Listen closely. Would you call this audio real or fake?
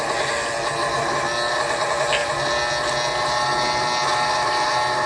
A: real